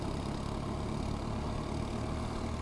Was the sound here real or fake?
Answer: real